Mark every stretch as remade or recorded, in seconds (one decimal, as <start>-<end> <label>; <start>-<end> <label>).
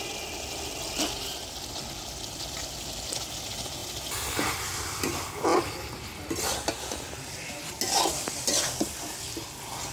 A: 0.0-9.9 recorded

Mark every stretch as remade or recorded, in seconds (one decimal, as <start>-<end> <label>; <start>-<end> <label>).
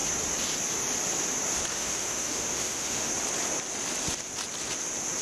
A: 0.0-1.7 recorded; 1.7-3.1 remade; 3.1-5.2 recorded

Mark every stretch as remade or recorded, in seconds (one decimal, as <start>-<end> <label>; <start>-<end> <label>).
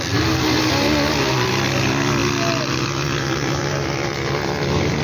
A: 0.0-5.0 recorded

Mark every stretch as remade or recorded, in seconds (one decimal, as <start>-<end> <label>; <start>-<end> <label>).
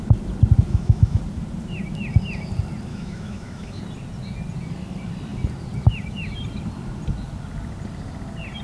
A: 0.0-0.7 recorded; 0.7-1.2 remade; 1.2-2.9 recorded; 2.9-3.8 remade; 3.8-8.6 recorded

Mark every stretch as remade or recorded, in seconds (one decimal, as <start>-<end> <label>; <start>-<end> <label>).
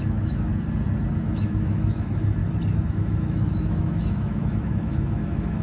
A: 0.0-0.5 remade; 0.5-1.2 recorded; 1.2-2.4 remade; 2.4-2.9 recorded; 2.9-5.6 remade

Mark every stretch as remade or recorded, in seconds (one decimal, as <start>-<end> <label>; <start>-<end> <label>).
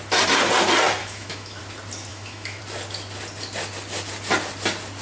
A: 0.0-1.0 recorded; 1.0-1.6 remade; 1.6-2.1 recorded; 2.1-2.6 remade; 2.6-5.0 recorded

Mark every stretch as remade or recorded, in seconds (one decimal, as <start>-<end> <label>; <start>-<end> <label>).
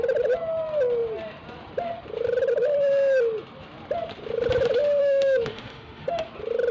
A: 0.0-5.0 recorded; 5.0-6.3 remade; 6.3-6.7 recorded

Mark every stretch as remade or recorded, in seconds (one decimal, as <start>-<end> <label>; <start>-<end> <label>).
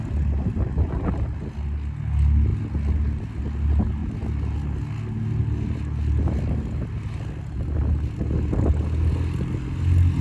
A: 0.0-10.2 recorded